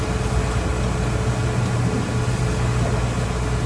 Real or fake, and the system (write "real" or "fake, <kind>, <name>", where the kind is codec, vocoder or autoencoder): real